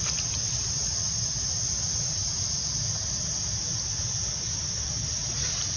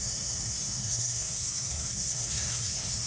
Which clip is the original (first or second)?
first